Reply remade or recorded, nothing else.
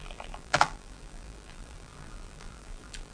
remade